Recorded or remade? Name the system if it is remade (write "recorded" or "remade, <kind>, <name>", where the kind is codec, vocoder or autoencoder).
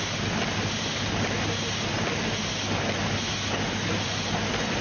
recorded